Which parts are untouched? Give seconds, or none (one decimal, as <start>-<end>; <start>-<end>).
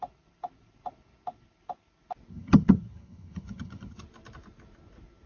0.0-2.3; 4.0-5.3